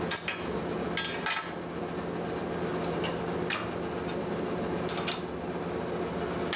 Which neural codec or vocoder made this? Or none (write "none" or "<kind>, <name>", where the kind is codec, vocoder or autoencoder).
none